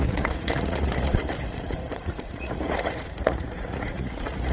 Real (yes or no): no